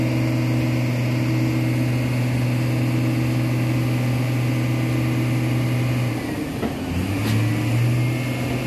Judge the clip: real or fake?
real